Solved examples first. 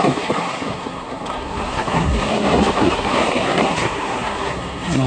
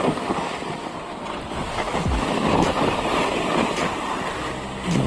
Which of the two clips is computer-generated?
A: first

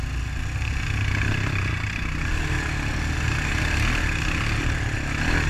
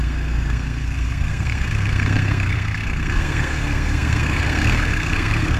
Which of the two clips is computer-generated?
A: second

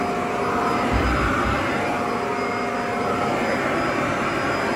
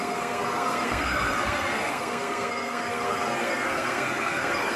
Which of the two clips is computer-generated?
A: second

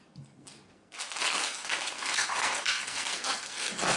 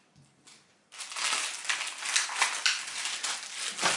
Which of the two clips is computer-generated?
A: first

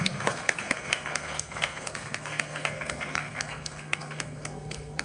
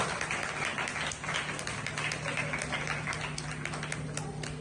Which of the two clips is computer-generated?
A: first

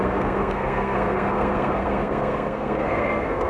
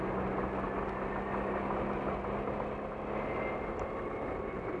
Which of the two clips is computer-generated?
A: first